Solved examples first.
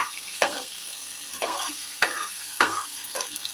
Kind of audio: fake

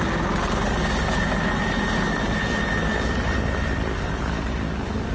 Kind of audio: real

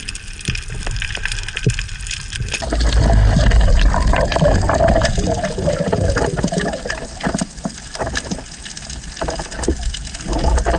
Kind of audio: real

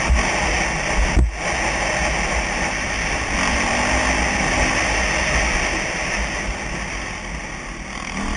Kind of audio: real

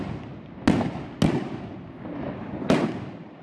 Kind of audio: real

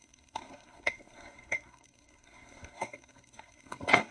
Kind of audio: fake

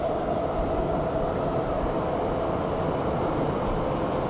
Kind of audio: real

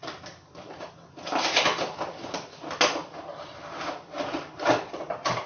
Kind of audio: real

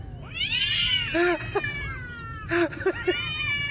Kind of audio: real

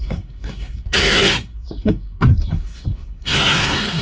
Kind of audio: fake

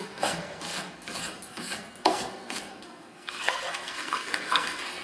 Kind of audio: fake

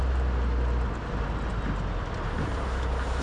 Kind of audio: real